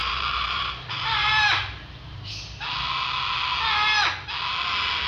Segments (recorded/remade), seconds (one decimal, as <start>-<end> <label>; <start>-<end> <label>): 0.0-2.3 remade; 2.3-5.1 recorded